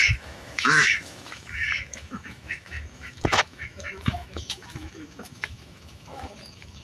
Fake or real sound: fake